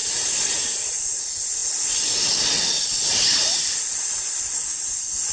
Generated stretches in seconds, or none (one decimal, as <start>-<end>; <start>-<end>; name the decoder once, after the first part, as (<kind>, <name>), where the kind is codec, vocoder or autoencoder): 0.0-0.8 (vocoder, BigVGAN v2)